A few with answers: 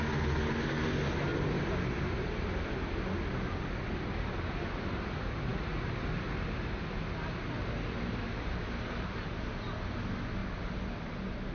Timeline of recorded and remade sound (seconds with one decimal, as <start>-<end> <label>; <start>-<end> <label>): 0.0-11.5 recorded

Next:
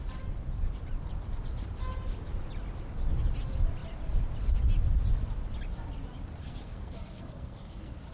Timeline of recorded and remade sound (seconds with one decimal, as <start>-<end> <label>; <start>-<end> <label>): 0.0-6.4 recorded; 6.4-8.1 remade

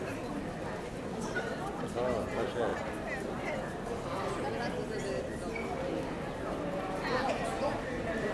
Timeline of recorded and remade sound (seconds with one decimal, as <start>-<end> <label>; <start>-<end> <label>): 0.0-8.3 recorded

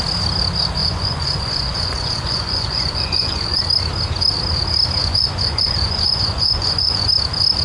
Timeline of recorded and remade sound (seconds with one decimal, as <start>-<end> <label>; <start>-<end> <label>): 0.0-0.8 recorded; 0.8-3.6 remade; 3.6-5.0 recorded; 5.0-7.1 remade; 7.1-7.6 recorded

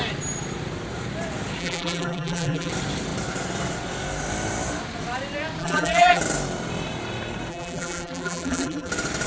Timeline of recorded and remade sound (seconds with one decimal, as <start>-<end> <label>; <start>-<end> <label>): 0.0-1.6 recorded; 1.6-2.7 remade; 2.7-5.6 recorded; 5.6-6.2 remade; 6.2-7.5 recorded; 7.5-8.9 remade; 8.9-9.3 recorded

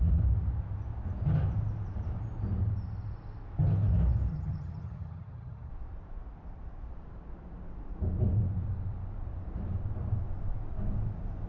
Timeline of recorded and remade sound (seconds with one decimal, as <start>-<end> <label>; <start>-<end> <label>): 0.0-4.3 recorded; 4.3-5.7 remade; 5.7-11.5 recorded

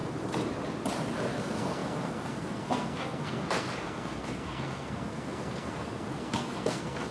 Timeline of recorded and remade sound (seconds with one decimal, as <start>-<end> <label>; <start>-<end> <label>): 0.0-1.4 recorded; 1.4-7.1 remade

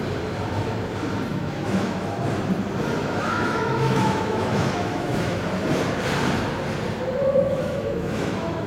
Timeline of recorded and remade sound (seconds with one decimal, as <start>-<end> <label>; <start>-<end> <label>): 0.0-1.3 recorded; 1.3-2.2 remade; 2.2-3.0 recorded; 3.0-5.4 remade; 5.4-7.2 recorded; 7.2-8.7 remade